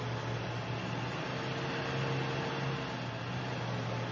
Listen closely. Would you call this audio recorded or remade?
recorded